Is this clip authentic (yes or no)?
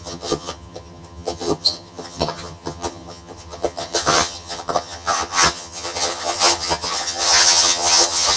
no